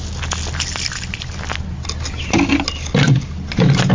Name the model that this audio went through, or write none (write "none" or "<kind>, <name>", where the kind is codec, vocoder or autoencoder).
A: none